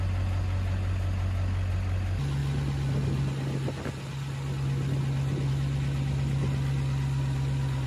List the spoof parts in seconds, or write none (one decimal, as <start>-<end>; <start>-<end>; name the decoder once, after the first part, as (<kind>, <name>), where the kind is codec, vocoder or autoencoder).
none